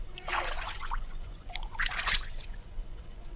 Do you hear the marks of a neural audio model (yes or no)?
yes